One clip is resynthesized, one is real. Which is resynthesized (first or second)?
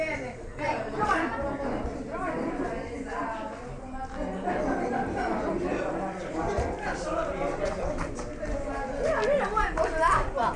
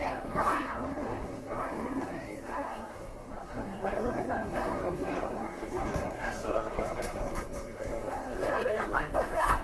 second